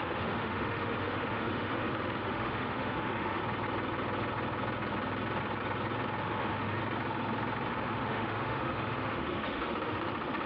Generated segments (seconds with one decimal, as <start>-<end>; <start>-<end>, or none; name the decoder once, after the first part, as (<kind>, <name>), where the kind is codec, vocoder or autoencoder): 0.0-3.4 (autoencoder, DAC-VAE); 6.2-6.8; 7.7-10.5